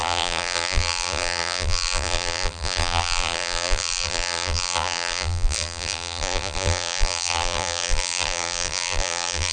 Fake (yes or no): yes